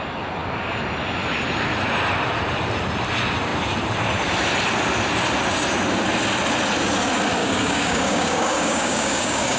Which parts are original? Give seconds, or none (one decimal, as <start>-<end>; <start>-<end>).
0.0-7.4